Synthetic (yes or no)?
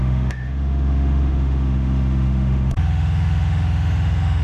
yes